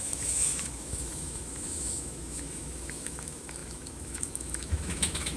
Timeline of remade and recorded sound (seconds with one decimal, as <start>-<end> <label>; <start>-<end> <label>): 0.0-5.4 remade